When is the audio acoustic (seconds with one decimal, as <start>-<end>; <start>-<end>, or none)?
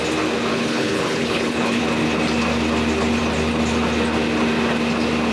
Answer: 0.0-0.5; 1.8-5.3